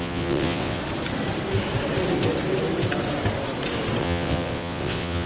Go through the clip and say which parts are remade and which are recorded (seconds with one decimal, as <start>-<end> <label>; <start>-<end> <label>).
0.0-0.8 remade; 0.8-4.0 recorded; 4.0-5.3 remade